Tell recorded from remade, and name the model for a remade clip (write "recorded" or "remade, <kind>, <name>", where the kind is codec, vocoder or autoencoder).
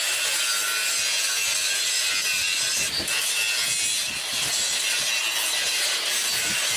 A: recorded